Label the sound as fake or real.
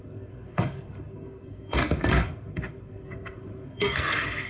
fake